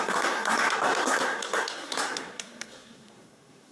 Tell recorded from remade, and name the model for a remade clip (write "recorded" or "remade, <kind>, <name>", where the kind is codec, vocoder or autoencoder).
remade, codec, SNAC